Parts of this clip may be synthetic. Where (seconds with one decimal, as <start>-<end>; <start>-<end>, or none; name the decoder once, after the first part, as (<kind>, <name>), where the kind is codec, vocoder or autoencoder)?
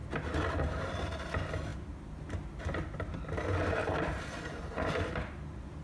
3.8-4.6 (vocoder, BigVGAN v2)